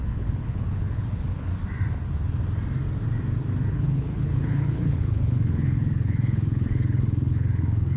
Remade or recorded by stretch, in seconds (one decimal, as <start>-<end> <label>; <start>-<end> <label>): 0.0-1.5 remade; 1.5-3.7 recorded; 3.7-8.0 remade